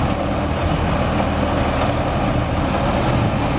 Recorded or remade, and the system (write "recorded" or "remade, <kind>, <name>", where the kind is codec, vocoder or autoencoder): recorded